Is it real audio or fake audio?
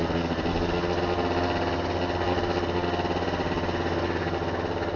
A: real